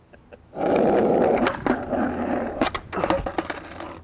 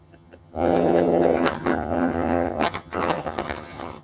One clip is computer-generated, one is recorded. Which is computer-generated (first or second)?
second